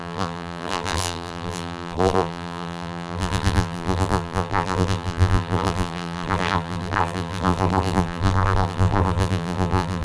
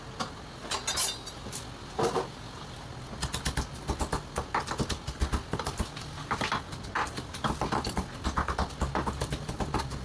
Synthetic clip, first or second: first